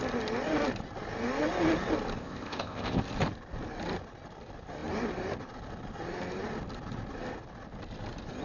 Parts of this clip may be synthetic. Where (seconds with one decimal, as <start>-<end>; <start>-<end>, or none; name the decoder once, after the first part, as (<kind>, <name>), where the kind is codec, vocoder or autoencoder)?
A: 2.2-3.0 (codec, ZipCodec)